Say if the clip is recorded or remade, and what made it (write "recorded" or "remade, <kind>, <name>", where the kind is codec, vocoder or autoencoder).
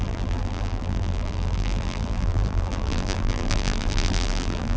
remade, vocoder, BigVGAN v2